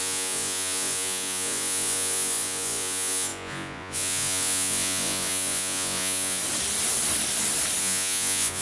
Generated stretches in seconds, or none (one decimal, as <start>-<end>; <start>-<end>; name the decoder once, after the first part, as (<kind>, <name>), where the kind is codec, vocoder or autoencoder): 0.0-6.4 (vocoder, Vocos); 7.8-8.6